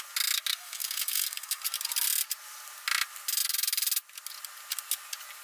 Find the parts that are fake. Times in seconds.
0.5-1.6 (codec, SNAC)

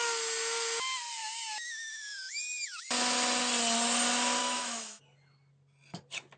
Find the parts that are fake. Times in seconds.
1.2-2.9 (autoencoder, DAC-VAE); 4.4-5.0

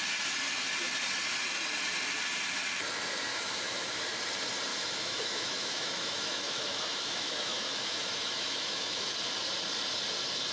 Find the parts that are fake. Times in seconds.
3.3-4.0 (autoencoder, DAC-VAE); 4.7-9.1

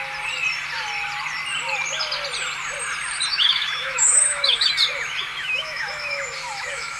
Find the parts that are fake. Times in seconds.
3.3-4.7 (autoencoder, DAC-VAE); 5.4-7.0

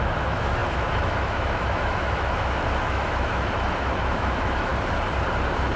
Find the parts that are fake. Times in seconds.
0.0-4.7 (autoencoder, DAC-VAE)